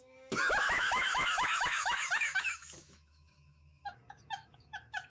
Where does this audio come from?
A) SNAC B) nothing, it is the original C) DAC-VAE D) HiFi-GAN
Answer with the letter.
C